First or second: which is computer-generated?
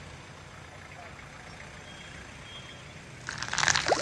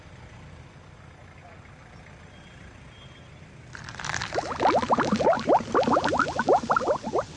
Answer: second